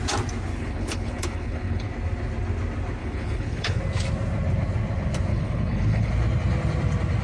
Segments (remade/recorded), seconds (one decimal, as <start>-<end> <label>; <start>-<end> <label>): 0.0-0.5 recorded; 0.5-1.9 remade; 1.9-3.0 recorded; 3.0-3.8 remade; 3.8-5.3 recorded; 5.3-6.1 remade; 6.1-7.2 recorded